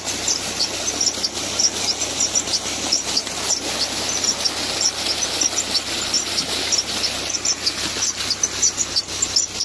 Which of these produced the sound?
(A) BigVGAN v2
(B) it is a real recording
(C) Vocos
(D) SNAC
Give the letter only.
B